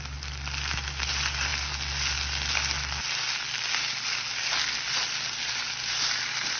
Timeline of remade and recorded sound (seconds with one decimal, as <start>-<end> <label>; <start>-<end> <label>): 0.0-6.6 recorded